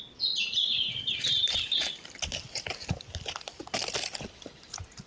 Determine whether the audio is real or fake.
real